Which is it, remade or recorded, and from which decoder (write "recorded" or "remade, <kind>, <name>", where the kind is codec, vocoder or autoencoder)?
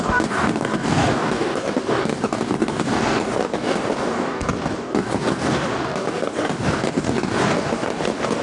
remade, codec, DAC